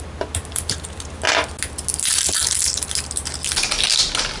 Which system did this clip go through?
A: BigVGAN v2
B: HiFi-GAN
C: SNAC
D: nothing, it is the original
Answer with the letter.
D